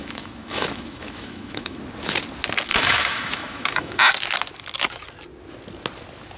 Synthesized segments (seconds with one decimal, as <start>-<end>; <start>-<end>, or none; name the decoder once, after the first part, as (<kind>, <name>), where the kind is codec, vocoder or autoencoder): 0.0-1.8 (autoencoder, DAC-VAE); 2.7-4.0